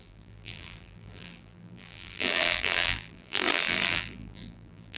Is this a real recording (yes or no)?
no